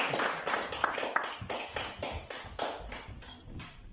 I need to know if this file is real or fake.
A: real